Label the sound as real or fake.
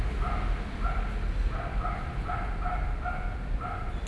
real